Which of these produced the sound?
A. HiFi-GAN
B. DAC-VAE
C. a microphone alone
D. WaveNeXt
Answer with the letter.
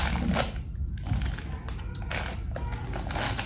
C